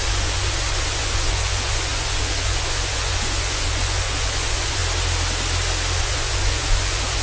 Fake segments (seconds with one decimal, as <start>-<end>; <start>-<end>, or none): 0.0-4.8; 6.0-7.2

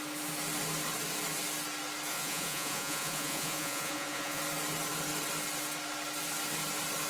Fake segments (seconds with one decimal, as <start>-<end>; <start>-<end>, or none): 2.1-4.4

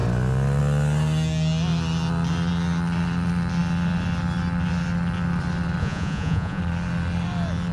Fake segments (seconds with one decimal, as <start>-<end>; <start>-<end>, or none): 5.8-6.6

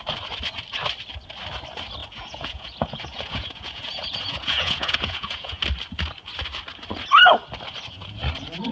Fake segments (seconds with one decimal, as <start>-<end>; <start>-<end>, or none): 2.0-5.6

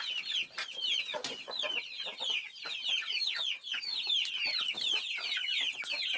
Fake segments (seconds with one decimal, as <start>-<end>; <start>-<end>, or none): 1.1-1.8

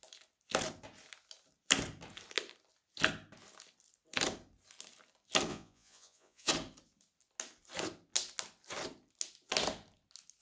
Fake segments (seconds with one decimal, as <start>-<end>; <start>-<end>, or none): 5.5-6.5

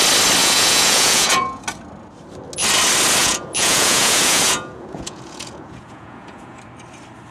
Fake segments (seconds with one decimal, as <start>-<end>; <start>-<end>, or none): 0.4-1.6; 3.2-6.6